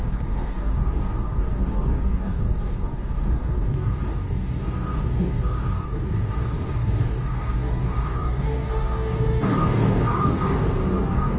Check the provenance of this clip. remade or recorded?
remade